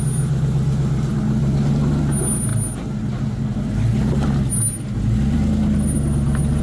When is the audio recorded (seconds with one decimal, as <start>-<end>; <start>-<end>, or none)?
0.0-6.6